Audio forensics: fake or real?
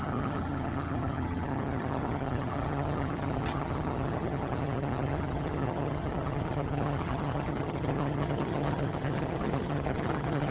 fake